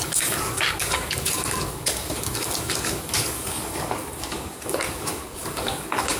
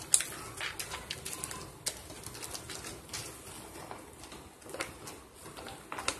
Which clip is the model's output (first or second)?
first